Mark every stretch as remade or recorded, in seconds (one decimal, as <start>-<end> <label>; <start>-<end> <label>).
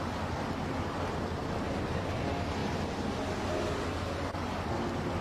0.0-5.2 recorded